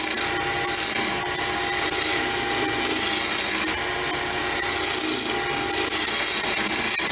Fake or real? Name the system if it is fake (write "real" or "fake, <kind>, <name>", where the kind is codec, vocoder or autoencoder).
real